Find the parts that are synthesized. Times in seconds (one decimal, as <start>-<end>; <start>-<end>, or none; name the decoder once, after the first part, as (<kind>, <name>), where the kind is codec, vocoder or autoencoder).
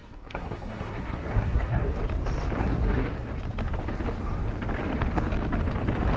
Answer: 0.0-2.0 (codec, SNAC); 2.6-3.3